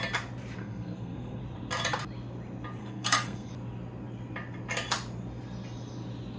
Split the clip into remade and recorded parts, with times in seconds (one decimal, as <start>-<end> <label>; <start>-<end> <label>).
0.0-0.6 recorded; 0.6-1.4 remade; 1.4-2.8 recorded; 2.8-3.5 remade; 3.5-6.4 recorded